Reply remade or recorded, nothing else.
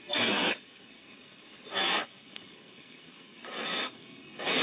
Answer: remade